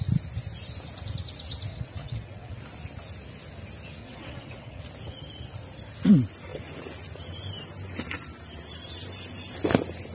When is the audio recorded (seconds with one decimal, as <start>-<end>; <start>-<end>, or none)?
0.0-1.7; 2.6-4.0; 4.8-10.1